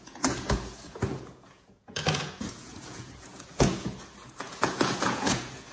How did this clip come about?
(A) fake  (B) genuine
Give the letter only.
A